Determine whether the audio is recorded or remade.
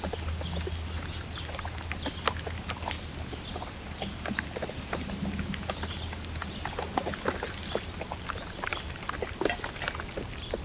recorded